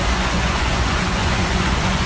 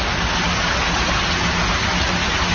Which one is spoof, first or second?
first